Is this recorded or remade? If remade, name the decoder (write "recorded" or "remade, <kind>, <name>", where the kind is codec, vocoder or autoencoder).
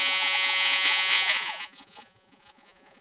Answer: remade, vocoder, Vocos